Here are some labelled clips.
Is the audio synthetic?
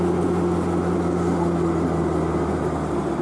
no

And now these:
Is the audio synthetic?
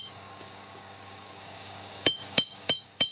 yes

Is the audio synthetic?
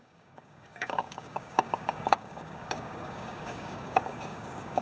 yes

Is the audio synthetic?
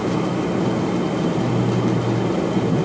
no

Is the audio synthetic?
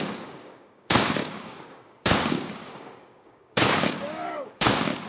yes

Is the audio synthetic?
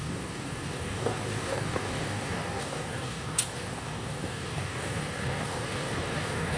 yes